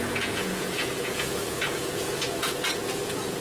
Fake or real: fake